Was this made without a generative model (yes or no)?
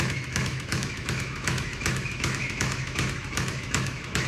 no